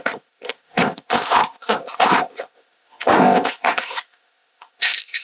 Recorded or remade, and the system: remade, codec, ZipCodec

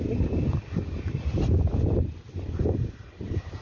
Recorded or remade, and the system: recorded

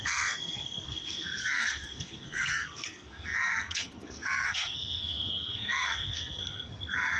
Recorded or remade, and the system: remade, codec, SNAC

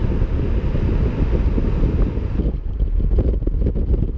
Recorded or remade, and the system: recorded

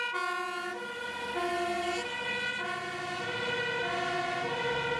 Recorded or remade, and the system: recorded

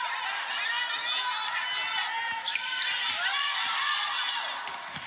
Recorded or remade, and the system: recorded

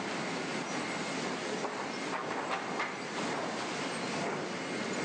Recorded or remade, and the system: recorded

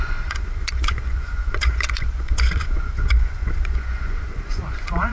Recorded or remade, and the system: remade, vocoder, Vocos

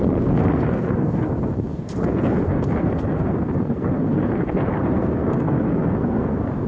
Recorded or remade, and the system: remade, codec, SNAC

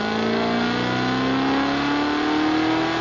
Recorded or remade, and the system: recorded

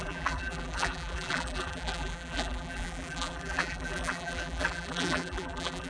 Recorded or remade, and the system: remade, vocoder, BigVGAN v2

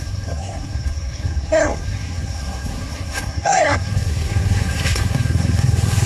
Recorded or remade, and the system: remade, codec, SNAC